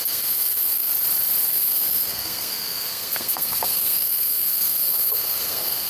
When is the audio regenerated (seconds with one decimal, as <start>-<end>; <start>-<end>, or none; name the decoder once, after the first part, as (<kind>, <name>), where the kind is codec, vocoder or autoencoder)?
0.0-0.9 (codec, SNAC); 1.5-5.9